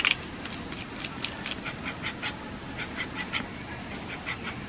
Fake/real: real